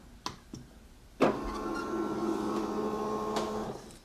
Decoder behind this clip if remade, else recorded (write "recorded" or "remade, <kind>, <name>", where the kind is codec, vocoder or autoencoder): recorded